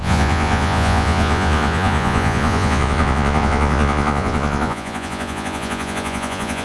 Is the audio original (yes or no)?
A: no